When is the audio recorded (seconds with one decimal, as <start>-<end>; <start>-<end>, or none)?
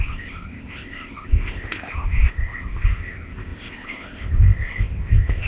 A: none